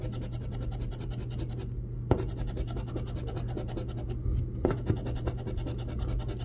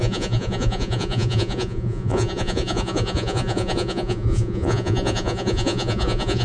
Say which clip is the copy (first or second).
second